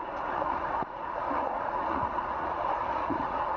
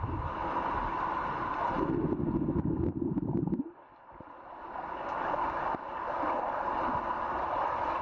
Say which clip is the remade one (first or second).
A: first